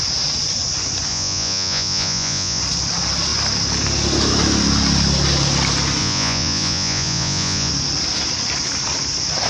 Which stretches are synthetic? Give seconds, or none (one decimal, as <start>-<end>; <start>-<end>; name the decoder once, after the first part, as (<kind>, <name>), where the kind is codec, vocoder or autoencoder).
1.1-2.6 (vocoder, Vocos); 6.0-7.7